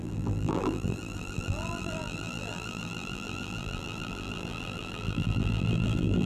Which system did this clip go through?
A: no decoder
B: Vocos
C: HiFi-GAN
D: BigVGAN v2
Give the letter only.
D